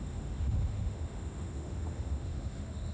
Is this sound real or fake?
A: fake